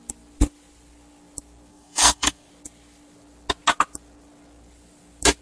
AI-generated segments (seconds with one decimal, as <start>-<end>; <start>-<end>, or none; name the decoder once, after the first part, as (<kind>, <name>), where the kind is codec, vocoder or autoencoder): 1.7-2.5 (codec, SNAC)

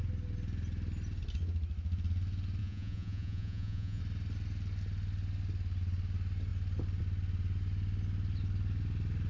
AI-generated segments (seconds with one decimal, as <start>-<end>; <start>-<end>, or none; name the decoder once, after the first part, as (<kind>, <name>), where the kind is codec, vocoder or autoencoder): 2.6-4.0 (vocoder, Vocos)

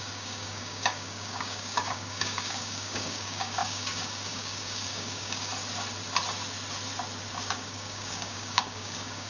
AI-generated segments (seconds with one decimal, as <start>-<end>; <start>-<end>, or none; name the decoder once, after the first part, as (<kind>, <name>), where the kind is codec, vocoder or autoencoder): 0.0-5.5 (codec, DAC); 7.5-9.3

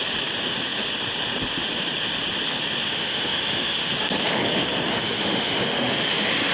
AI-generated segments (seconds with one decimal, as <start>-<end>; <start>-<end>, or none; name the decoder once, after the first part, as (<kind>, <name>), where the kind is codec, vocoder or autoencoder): 2.9-3.9 (autoencoder, DAC-VAE); 4.9-6.5

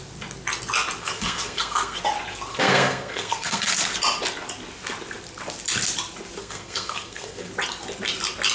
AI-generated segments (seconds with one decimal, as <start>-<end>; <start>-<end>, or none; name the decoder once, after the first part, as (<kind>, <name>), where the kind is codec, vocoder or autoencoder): 1.0-2.0 (codec, SNAC); 2.5-3.7; 6.4-7.5